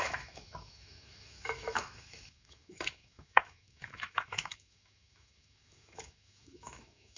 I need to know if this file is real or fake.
fake